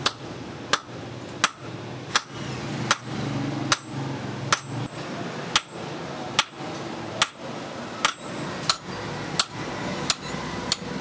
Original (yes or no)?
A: yes